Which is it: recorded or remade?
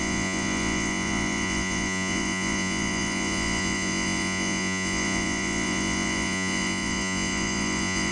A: remade